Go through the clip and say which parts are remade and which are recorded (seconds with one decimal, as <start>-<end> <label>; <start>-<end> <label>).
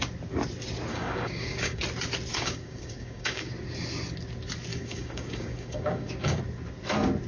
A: 0.0-0.9 recorded; 0.9-1.8 remade; 1.8-2.3 recorded; 2.3-3.5 remade; 3.5-4.7 recorded; 4.7-6.4 remade; 6.4-7.3 recorded